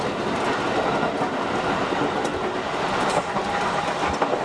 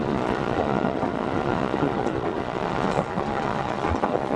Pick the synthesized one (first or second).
second